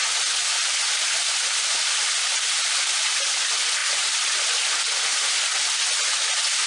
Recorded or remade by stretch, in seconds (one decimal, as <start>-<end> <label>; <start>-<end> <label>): 0.0-6.7 recorded